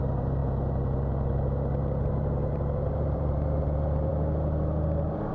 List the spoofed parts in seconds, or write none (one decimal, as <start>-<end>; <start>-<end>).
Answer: 0.0-4.1